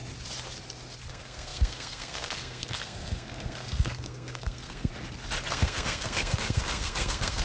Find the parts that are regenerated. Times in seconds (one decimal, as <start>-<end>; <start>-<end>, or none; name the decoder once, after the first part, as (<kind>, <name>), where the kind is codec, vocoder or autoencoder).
1.1-4.9 (codec, SNAC); 5.5-7.4